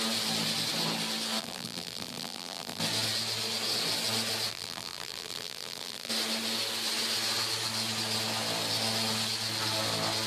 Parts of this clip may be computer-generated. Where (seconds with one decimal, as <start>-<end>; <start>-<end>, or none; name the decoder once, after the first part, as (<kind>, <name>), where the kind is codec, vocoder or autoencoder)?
1.4-2.8 (vocoder, BigVGAN v2); 4.5-6.1